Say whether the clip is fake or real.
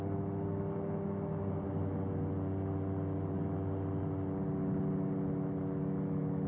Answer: real